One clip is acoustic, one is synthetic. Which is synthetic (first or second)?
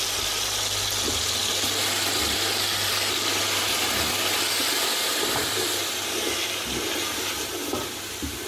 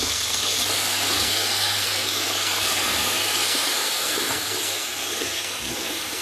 second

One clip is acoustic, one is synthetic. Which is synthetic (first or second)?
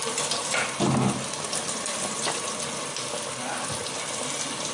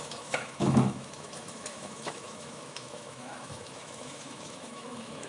second